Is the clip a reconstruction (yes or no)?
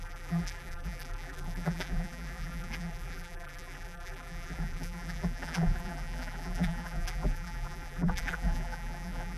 yes